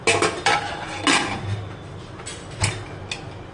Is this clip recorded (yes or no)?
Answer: yes